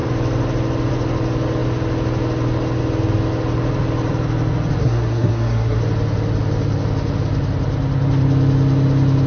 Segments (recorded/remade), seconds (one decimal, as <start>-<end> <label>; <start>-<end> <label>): 0.0-4.8 recorded; 4.8-5.8 remade; 5.8-9.3 recorded